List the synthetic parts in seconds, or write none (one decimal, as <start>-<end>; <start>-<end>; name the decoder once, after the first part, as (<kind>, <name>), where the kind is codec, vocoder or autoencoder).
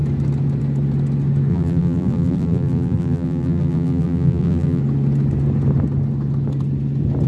1.5-4.8 (vocoder, BigVGAN v2)